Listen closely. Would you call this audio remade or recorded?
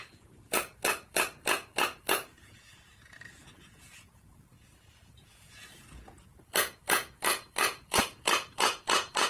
remade